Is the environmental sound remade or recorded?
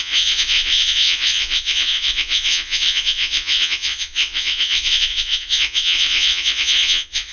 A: remade